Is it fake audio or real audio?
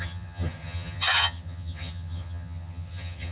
fake